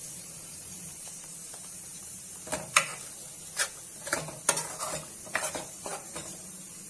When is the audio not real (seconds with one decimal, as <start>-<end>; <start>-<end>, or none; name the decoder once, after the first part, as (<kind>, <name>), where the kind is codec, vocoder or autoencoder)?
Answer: 0.0-2.9 (vocoder, BigVGAN v2); 5.2-6.9